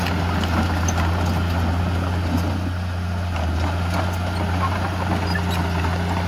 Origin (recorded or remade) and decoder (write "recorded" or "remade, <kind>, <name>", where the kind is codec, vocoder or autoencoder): recorded